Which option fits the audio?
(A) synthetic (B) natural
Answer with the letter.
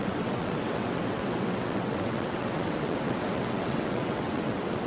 A